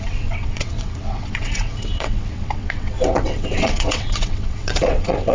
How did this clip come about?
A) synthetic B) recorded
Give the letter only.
A